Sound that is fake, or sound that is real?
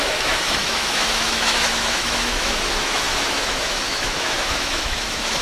fake